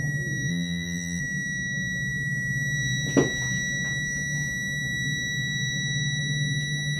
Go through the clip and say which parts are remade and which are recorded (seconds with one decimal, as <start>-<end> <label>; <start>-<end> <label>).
0.0-0.5 recorded; 0.5-1.2 remade; 1.2-7.0 recorded